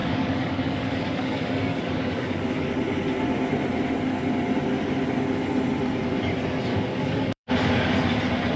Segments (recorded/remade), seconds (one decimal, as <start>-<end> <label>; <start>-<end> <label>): 0.0-2.7 remade; 2.7-6.7 recorded; 6.7-7.5 remade; 7.5-8.6 recorded